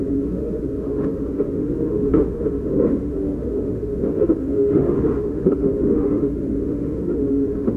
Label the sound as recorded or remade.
remade